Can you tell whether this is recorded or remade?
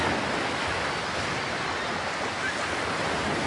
recorded